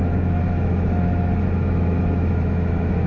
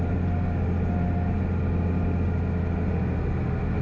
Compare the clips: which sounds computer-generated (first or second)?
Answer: first